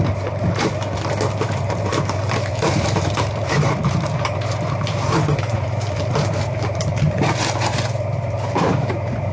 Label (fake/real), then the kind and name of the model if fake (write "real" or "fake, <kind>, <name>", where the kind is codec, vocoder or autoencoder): fake, vocoder, BigVGAN v2